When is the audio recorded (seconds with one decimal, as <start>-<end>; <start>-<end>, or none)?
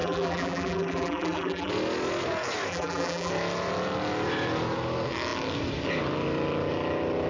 1.7-2.7; 3.3-7.3